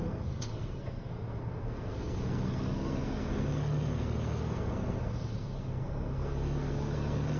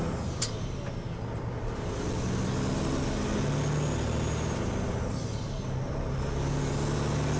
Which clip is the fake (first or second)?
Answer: first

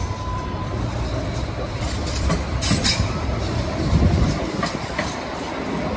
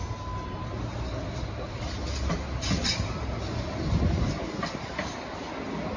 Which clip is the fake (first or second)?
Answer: first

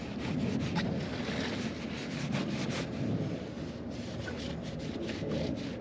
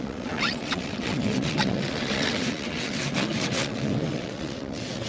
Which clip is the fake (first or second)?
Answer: second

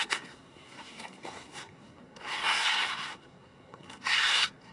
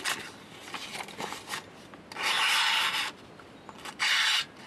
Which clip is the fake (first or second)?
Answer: first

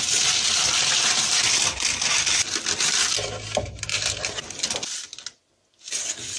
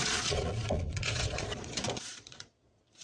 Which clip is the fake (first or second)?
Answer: second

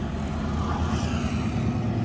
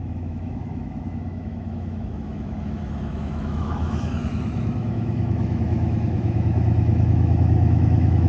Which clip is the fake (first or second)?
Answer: second